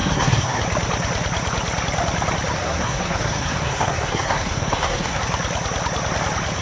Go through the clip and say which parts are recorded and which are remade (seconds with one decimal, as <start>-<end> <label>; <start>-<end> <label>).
0.0-0.6 remade; 0.6-2.6 recorded; 2.6-5.2 remade; 5.2-6.6 recorded

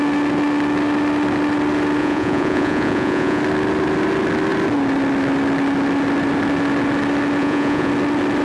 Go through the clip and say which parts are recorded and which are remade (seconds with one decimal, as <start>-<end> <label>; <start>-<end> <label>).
0.0-2.0 recorded; 2.0-3.4 remade; 3.4-7.4 recorded; 7.4-7.9 remade; 7.9-8.4 recorded

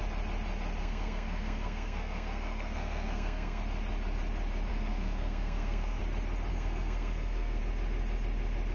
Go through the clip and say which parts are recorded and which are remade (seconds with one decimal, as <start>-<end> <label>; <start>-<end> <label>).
0.0-0.8 recorded; 0.8-3.6 remade; 3.6-4.7 recorded; 4.7-6.0 remade; 6.0-6.5 recorded; 6.5-7.6 remade; 7.6-8.7 recorded

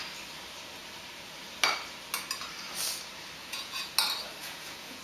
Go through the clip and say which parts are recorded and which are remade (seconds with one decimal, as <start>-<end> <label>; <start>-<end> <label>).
0.0-3.4 recorded; 3.4-3.9 remade; 3.9-4.4 recorded; 4.4-5.0 remade